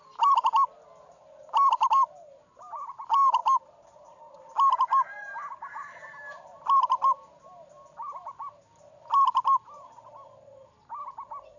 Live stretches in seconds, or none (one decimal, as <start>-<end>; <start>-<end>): 0.0-11.6